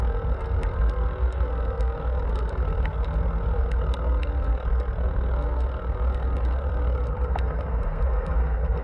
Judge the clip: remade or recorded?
remade